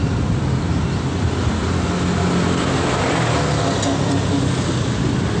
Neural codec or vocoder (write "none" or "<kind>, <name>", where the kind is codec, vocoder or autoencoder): none